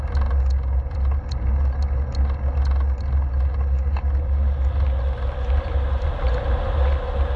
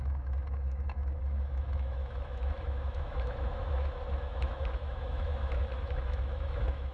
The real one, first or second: first